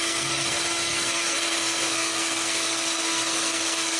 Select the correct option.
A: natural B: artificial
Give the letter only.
B